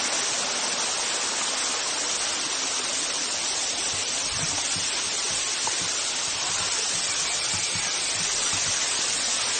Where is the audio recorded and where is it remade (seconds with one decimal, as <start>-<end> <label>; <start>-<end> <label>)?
0.0-2.3 recorded; 2.3-4.5 remade; 4.5-9.6 recorded